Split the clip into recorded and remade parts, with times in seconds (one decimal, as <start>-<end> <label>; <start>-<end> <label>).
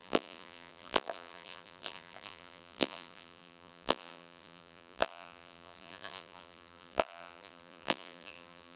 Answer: 0.0-8.8 remade